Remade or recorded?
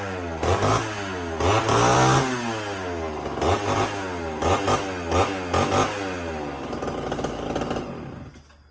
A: recorded